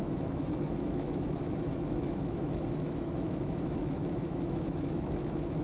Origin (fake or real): fake